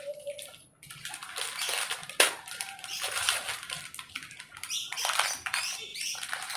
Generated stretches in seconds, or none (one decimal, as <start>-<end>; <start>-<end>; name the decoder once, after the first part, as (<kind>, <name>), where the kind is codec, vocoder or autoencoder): 2.0-3.8 (vocoder, BigVGAN v2)